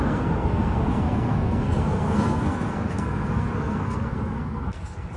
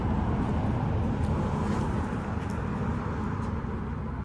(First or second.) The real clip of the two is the second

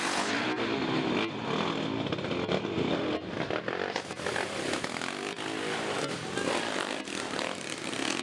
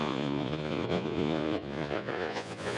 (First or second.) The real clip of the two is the first